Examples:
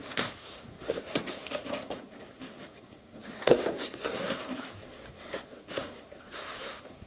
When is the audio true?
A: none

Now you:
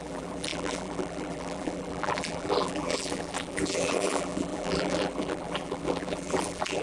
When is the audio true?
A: none

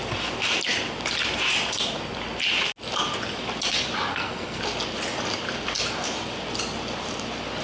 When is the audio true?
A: 0.0-4.1; 4.6-7.6

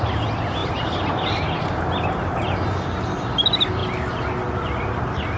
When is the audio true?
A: 0.0-0.6; 1.3-5.4

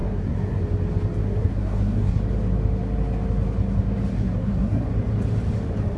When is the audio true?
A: 0.6-1.2; 2.2-4.1; 4.9-6.0

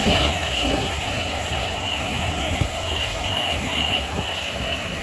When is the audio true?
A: none

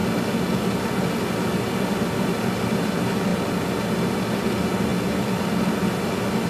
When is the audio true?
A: 0.0-6.5